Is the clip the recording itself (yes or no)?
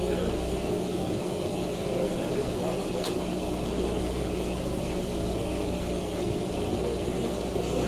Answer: no